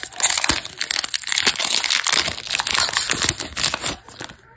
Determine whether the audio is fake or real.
real